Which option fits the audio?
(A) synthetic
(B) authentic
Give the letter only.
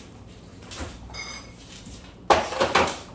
A